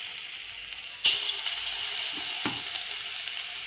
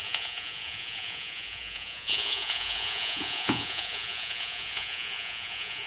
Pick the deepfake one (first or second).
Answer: second